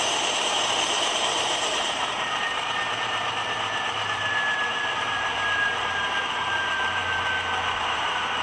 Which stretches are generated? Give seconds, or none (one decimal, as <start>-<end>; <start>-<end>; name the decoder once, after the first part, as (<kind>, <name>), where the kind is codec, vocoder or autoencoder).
0.0-7.0 (vocoder, BigVGAN v2); 7.8-8.4